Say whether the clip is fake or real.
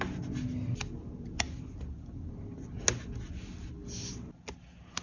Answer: real